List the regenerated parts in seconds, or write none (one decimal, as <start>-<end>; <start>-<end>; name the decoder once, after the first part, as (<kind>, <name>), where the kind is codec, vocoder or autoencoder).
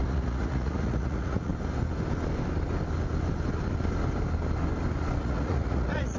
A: 0.0-1.5 (vocoder, Vocos); 5.2-6.2